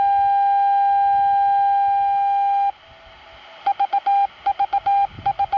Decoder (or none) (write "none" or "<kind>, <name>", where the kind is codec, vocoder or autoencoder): none